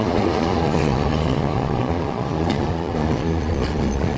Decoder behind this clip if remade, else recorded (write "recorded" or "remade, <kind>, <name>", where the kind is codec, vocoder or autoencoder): remade, vocoder, Vocos